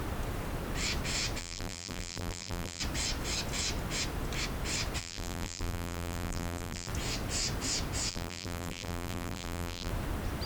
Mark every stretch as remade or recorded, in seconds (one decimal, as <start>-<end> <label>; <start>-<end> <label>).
0.0-1.4 recorded; 1.4-2.8 remade; 2.8-5.0 recorded; 5.0-6.9 remade; 6.9-8.1 recorded; 8.1-9.9 remade; 9.9-10.5 recorded